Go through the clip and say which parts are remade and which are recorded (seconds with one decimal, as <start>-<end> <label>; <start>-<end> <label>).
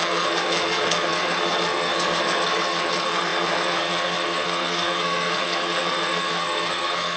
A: 0.0-7.2 remade